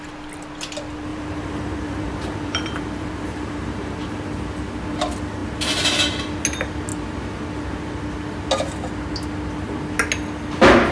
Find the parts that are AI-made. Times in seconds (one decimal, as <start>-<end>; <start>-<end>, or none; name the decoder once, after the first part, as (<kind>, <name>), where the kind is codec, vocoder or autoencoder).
1.1-4.2 (vocoder, BigVGAN v2)